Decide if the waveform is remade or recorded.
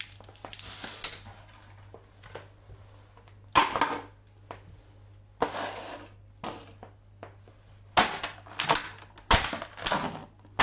recorded